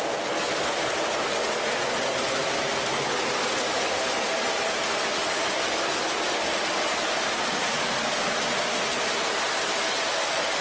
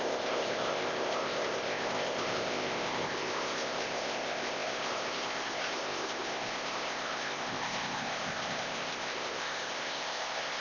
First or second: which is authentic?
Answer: first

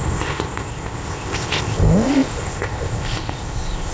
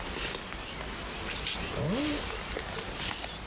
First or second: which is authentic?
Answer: second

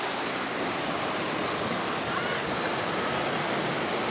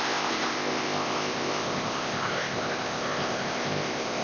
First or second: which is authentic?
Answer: first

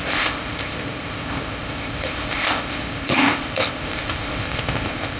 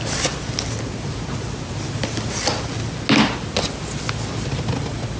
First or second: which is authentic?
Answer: second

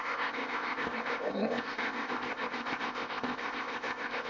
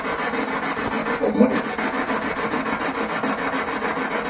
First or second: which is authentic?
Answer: second